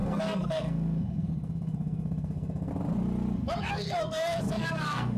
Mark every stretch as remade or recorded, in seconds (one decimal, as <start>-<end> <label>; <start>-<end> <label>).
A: 0.0-2.7 remade; 2.7-3.6 recorded; 3.6-5.2 remade